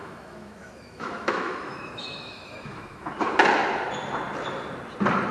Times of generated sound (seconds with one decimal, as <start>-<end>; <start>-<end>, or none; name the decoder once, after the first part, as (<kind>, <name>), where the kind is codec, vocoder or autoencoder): 0.0-3.2 (autoencoder, DAC-VAE)